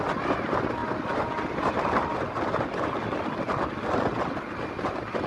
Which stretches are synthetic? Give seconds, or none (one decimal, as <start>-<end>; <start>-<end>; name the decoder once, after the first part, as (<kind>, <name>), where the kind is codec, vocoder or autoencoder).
none